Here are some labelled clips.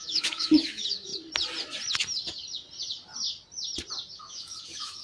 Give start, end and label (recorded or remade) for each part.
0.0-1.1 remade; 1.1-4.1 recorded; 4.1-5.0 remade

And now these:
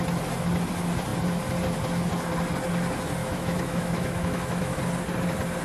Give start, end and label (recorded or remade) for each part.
0.0-3.2 recorded; 3.2-4.8 remade; 4.8-5.6 recorded

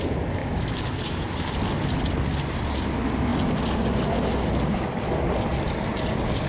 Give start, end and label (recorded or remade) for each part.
0.0-0.4 recorded; 0.4-1.5 remade; 1.5-6.5 recorded